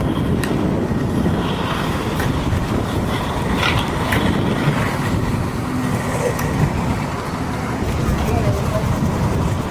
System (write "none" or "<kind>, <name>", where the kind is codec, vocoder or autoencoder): none